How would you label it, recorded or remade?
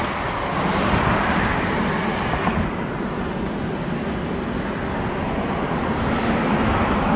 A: recorded